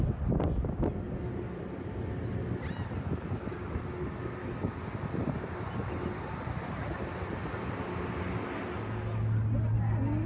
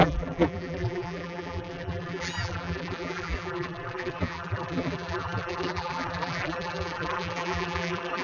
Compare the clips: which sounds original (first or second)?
first